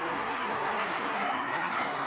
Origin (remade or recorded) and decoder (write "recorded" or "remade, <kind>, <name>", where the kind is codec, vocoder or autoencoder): remade, codec, SNAC